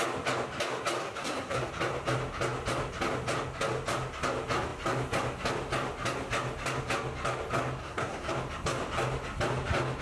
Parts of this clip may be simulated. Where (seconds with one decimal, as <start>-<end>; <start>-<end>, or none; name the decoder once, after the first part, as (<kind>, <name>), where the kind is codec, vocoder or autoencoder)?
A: 1.0-1.7 (codec, SNAC); 7.8-8.3